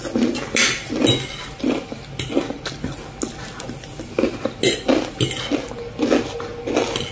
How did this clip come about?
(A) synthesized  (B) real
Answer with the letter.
B